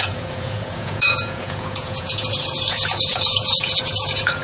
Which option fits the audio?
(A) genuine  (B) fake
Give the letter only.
B